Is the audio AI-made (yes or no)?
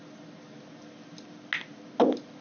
no